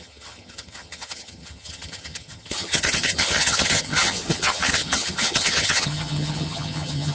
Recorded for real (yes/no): no